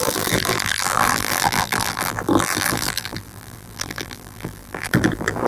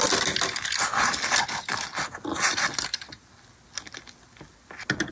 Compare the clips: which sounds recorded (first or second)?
second